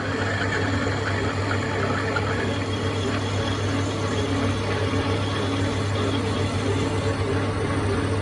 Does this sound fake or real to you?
real